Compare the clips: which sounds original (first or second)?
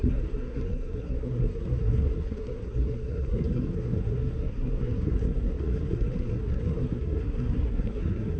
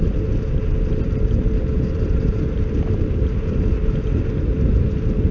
second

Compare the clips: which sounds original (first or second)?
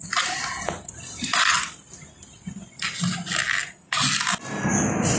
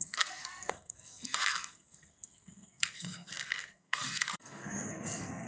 first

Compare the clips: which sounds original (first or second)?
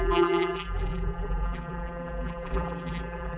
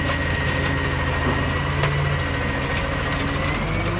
second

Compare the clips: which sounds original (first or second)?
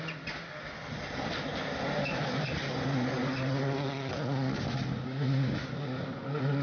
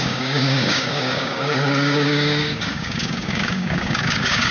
first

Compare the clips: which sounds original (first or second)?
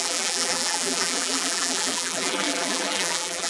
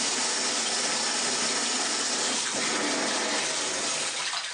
second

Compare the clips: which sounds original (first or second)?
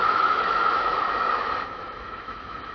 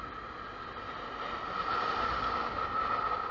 second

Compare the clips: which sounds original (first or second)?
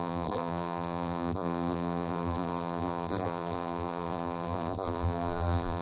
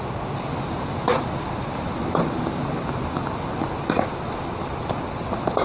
second